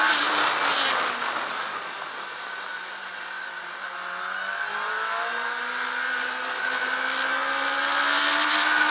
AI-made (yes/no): no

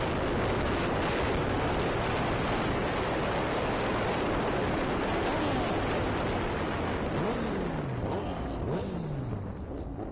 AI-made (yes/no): no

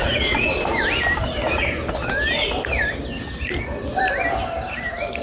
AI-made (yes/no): no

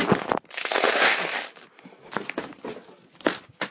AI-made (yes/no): no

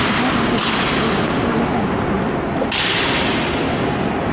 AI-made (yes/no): no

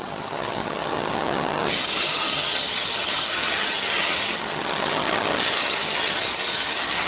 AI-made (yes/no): yes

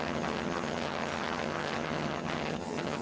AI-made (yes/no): yes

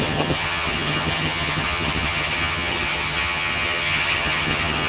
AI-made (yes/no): yes